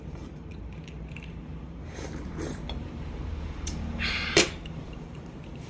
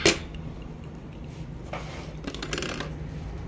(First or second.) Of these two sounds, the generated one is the first